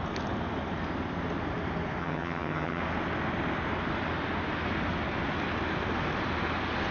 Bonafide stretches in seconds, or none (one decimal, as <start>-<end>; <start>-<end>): 0.0-2.0; 2.8-6.9